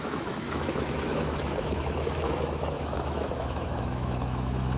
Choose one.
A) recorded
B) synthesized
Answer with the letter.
B